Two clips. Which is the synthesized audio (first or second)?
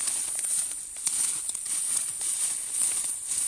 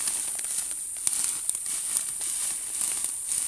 first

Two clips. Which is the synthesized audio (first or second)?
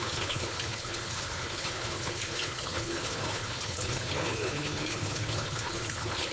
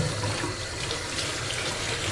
first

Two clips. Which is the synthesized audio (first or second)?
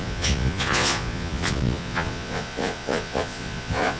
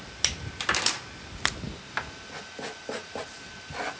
first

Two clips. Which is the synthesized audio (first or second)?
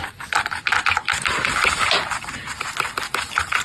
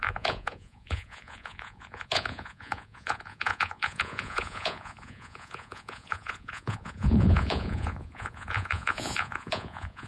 second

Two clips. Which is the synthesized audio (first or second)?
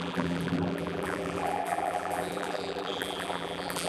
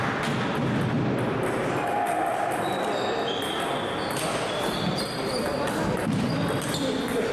first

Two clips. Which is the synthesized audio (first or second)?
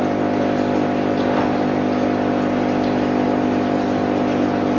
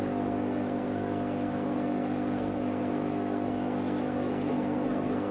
second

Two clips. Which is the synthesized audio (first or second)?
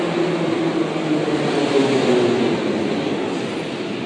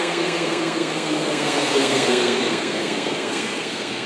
second